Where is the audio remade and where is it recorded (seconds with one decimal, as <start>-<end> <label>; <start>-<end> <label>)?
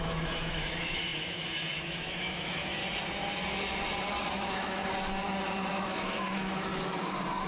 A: 0.0-2.8 remade; 2.8-4.3 recorded; 4.3-4.8 remade; 4.8-5.7 recorded; 5.7-6.7 remade; 6.7-7.5 recorded